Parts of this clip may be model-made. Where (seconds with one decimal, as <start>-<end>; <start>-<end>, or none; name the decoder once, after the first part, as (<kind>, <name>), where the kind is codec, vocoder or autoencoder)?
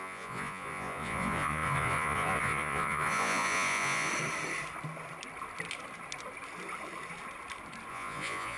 0.0-4.1 (vocoder, Vocos); 7.9-8.6